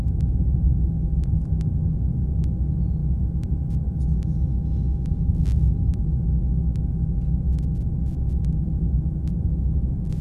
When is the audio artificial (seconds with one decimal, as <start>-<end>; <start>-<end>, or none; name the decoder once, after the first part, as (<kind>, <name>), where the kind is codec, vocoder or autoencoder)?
none